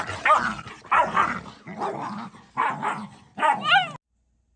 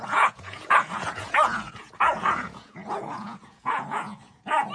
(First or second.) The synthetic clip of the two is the second